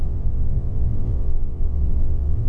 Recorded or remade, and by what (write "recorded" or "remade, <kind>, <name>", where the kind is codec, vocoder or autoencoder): remade, vocoder, WaveNeXt